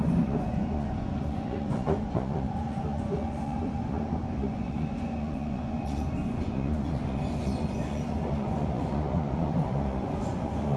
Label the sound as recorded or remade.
remade